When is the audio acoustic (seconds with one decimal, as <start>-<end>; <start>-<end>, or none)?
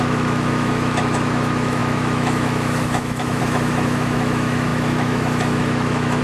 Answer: none